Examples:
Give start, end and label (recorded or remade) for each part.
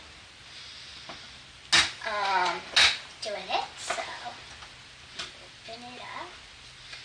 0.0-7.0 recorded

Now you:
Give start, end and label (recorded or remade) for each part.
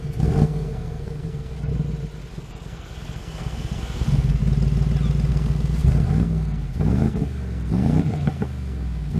0.0-1.7 remade; 1.7-2.3 recorded; 2.3-4.4 remade; 4.4-5.3 recorded; 5.3-9.2 remade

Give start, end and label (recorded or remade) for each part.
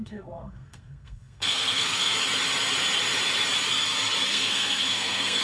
0.0-2.2 remade; 2.2-4.3 recorded; 4.3-5.4 remade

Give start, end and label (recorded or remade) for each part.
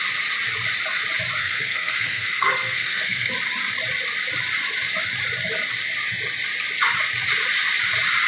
0.0-1.4 recorded; 1.4-3.3 remade; 3.3-8.3 recorded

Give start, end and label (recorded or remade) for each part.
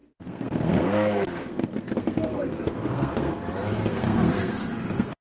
0.0-3.3 remade; 3.3-3.9 recorded; 3.9-5.2 remade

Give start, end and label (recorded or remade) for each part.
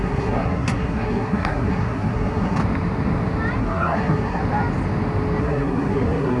0.0-2.6 remade; 2.6-3.6 recorded; 3.6-4.4 remade; 4.4-5.4 recorded; 5.4-6.4 remade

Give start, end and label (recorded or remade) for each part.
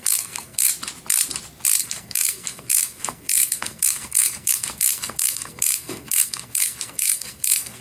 0.0-0.7 remade; 0.7-1.8 recorded; 1.8-7.8 remade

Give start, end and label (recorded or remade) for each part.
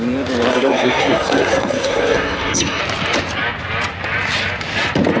0.0-0.5 recorded; 0.5-2.8 remade; 2.8-5.2 recorded